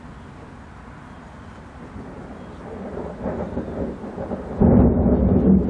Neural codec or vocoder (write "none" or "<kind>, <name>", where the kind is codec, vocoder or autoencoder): none